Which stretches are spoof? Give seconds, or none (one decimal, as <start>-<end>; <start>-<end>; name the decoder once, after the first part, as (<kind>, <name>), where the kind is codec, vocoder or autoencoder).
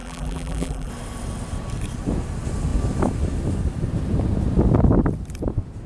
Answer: 0.0-0.9 (vocoder, BigVGAN v2)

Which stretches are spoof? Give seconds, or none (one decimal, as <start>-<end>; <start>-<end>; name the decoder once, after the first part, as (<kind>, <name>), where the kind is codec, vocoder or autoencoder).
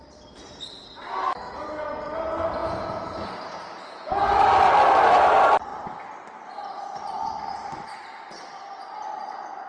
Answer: 2.6-4.2 (vocoder, Vocos)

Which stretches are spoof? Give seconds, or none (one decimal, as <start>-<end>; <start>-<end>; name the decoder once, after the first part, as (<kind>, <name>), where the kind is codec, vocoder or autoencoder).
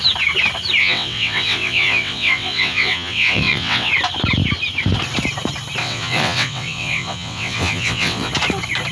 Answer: 0.8-3.9 (vocoder, WaveNeXt); 5.8-8.3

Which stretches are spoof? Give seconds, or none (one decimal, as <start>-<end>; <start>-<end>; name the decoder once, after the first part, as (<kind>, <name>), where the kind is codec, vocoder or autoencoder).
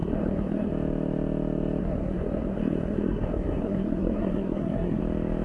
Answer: 0.0-0.7 (codec, SNAC); 1.8-5.0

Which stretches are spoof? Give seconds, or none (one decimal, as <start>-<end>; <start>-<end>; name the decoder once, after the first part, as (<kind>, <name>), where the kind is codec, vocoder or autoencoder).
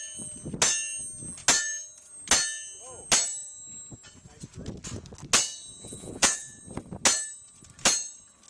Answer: 5.7-6.6 (vocoder, Vocos)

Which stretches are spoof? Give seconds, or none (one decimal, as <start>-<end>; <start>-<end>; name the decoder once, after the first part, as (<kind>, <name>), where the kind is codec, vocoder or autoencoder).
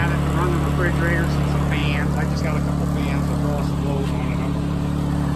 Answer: 3.6-5.4 (vocoder, BigVGAN v2)